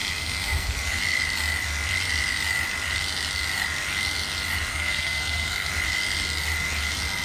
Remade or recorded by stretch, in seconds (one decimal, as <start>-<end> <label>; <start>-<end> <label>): 0.0-1.0 remade; 1.0-4.7 recorded; 4.7-5.7 remade; 5.7-7.2 recorded